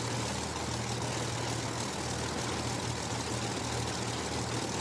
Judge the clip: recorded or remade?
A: recorded